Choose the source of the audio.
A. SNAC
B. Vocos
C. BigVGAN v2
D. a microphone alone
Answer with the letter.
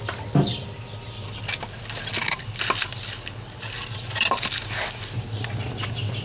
D